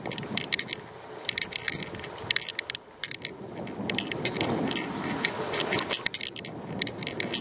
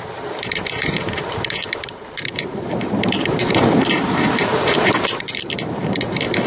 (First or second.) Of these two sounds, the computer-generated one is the second